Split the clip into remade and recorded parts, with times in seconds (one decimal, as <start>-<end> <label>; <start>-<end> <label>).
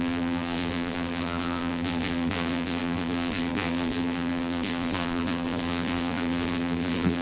0.0-7.2 remade